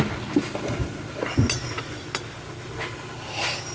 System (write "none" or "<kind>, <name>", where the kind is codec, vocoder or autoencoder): none